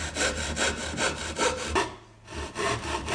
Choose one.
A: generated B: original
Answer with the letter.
B